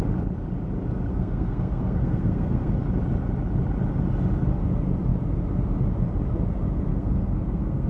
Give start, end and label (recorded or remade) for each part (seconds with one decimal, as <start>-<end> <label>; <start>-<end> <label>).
0.0-1.1 recorded; 1.1-2.8 remade; 2.8-6.9 recorded; 6.9-7.9 remade